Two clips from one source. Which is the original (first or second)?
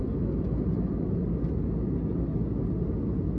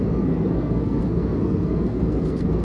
first